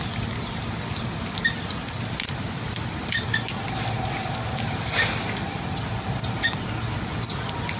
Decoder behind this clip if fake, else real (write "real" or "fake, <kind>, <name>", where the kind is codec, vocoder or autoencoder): real